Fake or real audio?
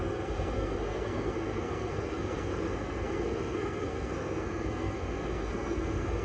fake